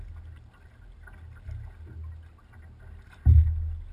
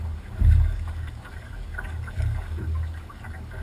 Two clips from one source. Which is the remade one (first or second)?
second